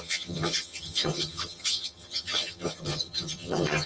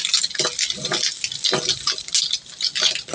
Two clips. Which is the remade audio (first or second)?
first